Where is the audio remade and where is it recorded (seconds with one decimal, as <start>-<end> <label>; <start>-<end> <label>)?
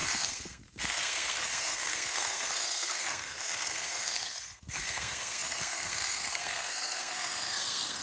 0.0-8.0 remade